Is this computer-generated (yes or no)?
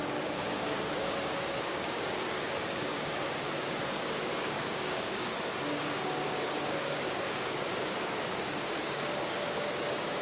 yes